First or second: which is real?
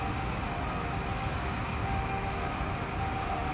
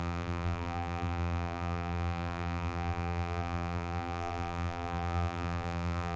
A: first